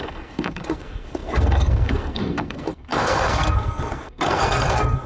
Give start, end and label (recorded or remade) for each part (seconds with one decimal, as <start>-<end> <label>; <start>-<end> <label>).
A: 0.0-5.1 remade